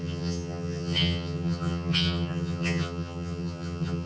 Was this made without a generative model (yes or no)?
no